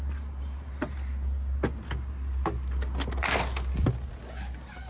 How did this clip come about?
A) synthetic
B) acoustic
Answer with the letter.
B